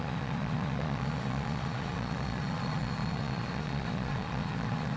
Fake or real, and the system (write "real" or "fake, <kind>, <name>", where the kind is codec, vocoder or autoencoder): fake, vocoder, Vocos